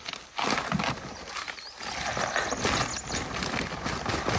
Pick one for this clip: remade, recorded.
recorded